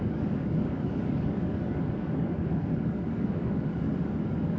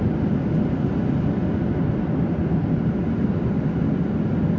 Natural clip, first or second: second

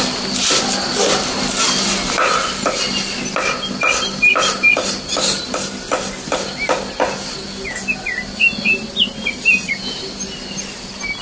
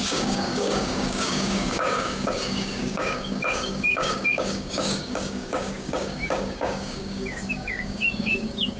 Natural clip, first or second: first